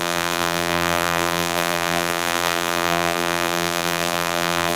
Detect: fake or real fake